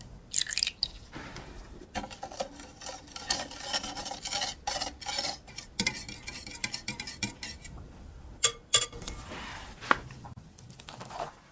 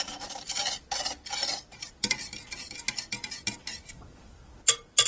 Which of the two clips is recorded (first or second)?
second